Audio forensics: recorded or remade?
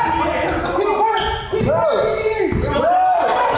recorded